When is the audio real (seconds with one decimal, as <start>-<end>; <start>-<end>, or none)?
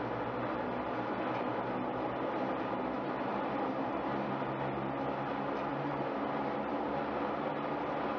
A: 0.0-3.3; 4.3-5.7; 6.9-8.2